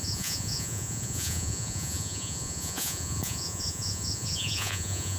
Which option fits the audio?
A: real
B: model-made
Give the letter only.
B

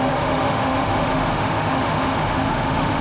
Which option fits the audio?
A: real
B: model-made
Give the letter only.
B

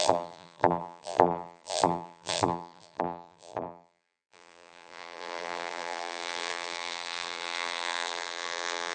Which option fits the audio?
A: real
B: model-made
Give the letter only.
B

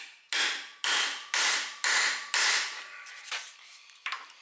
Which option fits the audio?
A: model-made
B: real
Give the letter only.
B